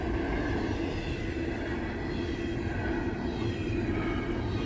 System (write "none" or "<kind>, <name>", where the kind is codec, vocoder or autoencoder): none